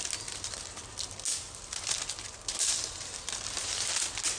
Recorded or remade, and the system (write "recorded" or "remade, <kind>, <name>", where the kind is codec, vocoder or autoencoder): recorded